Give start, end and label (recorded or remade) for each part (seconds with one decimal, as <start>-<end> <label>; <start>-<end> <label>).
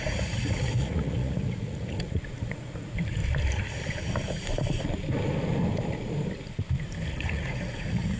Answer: 0.0-3.2 remade; 3.2-7.2 recorded; 7.2-8.2 remade